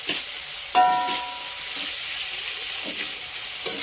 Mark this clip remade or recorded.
recorded